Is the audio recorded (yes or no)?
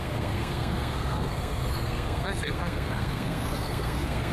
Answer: no